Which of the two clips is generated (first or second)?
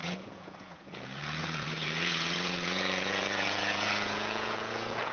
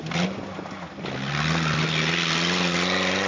first